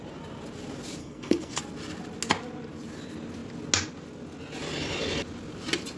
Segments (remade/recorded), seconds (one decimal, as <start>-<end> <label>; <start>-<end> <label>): 0.0-1.0 recorded; 1.0-1.6 remade; 1.6-6.0 recorded